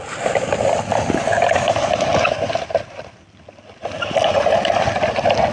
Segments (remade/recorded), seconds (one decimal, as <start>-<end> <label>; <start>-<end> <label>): 0.0-5.5 recorded